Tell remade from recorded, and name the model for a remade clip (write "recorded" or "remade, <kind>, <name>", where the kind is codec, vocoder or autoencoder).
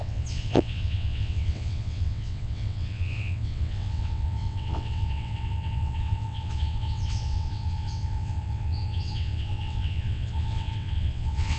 remade, vocoder, WaveNeXt